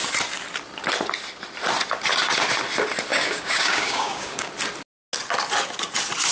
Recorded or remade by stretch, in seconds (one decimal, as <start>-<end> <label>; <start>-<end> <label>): 0.0-3.1 recorded; 3.1-4.5 remade; 4.5-6.3 recorded